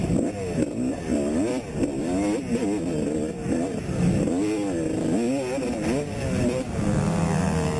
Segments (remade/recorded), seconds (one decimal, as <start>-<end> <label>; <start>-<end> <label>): 0.0-7.8 recorded